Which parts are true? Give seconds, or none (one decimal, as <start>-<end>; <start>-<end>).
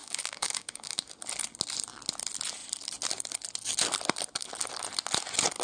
1.2-5.6